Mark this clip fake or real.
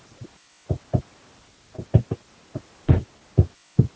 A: real